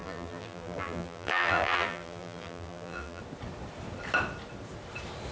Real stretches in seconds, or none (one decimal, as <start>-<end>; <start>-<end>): 3.2-5.3